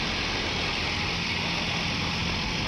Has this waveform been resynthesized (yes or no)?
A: no